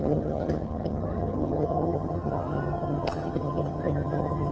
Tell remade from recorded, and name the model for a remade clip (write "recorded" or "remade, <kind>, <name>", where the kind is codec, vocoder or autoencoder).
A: remade, vocoder, HiFi-GAN